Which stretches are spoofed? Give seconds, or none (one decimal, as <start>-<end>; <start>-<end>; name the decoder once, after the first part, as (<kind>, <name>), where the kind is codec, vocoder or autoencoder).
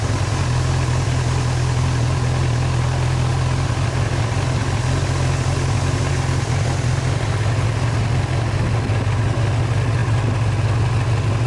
none